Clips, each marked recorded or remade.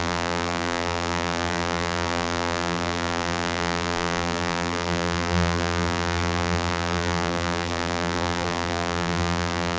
remade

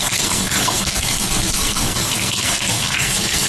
remade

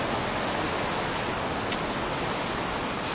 recorded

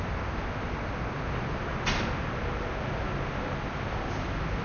recorded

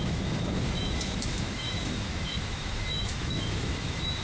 remade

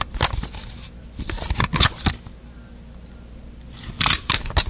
recorded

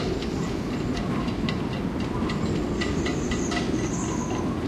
recorded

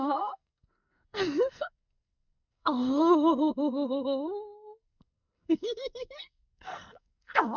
remade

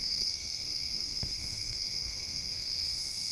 remade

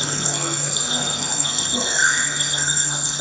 remade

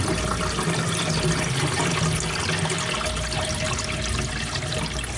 recorded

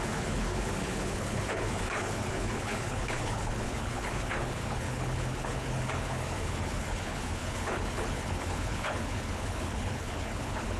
remade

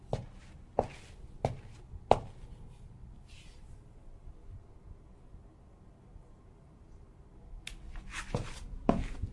recorded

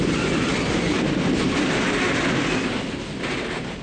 recorded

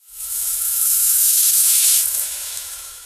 remade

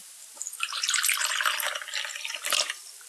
remade